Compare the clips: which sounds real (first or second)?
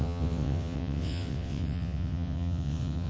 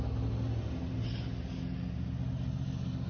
second